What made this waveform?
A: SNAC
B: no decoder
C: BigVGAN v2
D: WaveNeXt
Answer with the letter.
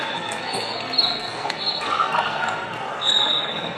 A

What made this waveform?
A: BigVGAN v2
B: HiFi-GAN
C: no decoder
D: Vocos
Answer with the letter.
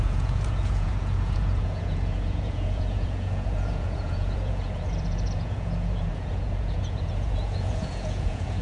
D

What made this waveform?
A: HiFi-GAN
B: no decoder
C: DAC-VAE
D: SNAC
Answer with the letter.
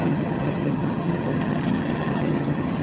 A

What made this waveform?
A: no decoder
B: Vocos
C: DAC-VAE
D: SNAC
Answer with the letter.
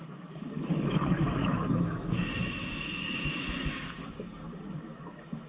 C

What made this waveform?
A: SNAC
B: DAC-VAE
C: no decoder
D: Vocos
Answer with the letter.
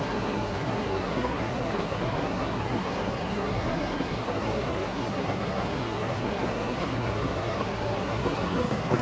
A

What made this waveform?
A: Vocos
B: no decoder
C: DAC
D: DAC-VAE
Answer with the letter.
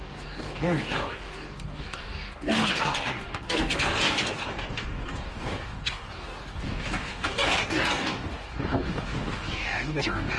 C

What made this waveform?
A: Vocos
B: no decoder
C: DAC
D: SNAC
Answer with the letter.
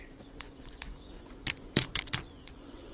A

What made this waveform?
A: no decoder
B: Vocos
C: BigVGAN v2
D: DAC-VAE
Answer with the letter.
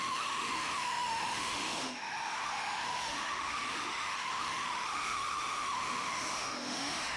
D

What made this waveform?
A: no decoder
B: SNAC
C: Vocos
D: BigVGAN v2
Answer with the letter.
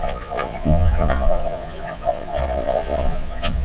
C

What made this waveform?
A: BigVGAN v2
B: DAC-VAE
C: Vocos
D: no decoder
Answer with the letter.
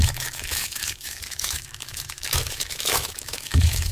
B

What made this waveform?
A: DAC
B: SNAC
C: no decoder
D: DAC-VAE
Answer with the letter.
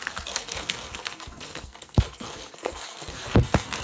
B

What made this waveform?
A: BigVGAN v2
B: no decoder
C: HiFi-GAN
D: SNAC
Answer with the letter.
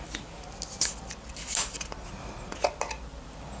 B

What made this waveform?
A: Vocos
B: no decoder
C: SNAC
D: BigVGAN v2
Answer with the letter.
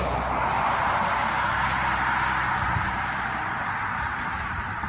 D